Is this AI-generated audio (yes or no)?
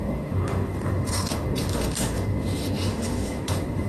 yes